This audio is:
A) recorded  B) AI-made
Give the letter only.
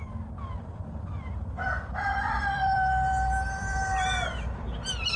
B